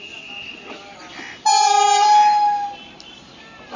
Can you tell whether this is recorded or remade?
recorded